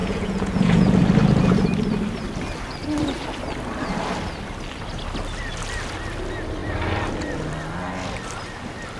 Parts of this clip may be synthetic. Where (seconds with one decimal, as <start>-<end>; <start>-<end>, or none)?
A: 0.0-1.0